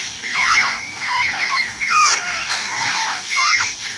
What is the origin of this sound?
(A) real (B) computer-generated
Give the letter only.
B